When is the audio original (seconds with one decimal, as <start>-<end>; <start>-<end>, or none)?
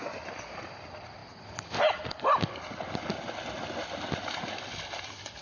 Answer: 0.0-5.4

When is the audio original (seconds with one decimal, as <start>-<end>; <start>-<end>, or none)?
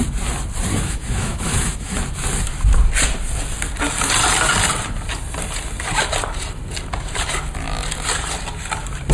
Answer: 0.0-0.7; 2.0-9.1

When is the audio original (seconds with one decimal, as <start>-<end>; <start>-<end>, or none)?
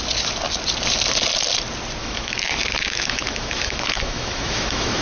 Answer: 0.0-2.0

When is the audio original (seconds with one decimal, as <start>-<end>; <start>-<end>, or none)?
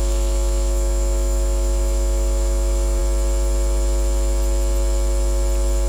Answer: 3.0-5.9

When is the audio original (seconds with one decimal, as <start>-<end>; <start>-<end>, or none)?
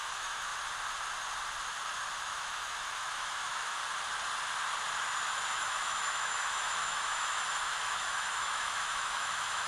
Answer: 0.5-2.2; 3.8-5.5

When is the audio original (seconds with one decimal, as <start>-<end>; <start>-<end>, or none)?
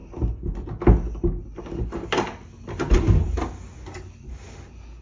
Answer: 0.0-5.0